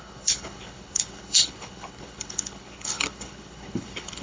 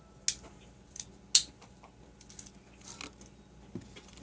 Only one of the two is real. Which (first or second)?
second